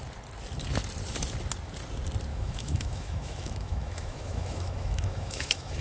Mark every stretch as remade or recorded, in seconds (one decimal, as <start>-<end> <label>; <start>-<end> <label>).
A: 0.0-2.3 recorded; 2.3-5.8 remade